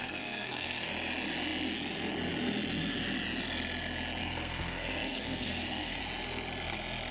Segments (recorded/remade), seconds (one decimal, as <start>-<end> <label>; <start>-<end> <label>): 0.0-0.9 remade; 0.9-4.2 recorded; 4.2-6.0 remade; 6.0-7.1 recorded